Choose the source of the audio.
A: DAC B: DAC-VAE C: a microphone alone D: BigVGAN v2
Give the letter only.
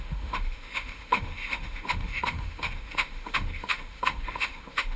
B